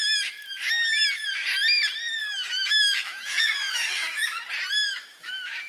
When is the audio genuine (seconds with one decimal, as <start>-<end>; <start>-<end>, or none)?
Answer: 0.0-2.2; 4.4-4.9